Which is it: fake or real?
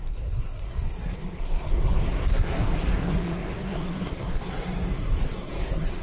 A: fake